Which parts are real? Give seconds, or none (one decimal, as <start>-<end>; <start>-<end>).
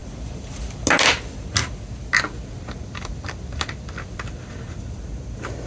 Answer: 0.0-5.7